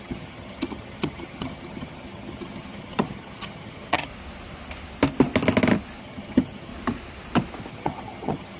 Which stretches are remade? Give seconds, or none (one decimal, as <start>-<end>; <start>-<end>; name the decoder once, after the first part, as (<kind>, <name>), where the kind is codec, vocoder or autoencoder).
0.0-4.1 (vocoder, HiFi-GAN); 6.0-6.7; 7.7-8.6